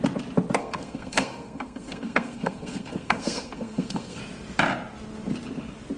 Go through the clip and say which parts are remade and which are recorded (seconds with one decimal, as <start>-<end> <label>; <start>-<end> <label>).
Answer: 0.0-0.6 recorded; 0.6-4.2 remade; 4.2-6.0 recorded